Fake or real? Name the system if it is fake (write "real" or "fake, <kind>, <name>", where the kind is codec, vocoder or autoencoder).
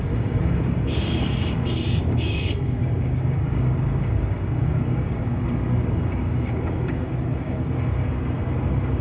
fake, codec, DAC